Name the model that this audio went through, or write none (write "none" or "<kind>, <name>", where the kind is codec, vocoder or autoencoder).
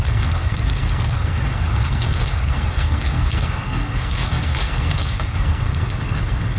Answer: codec, SNAC